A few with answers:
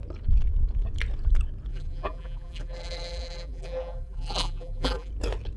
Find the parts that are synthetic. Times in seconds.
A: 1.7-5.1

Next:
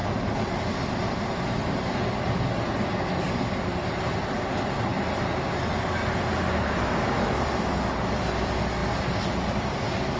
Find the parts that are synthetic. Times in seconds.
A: none

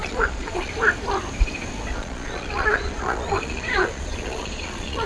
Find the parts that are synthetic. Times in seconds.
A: 0.0-0.7; 1.9-5.1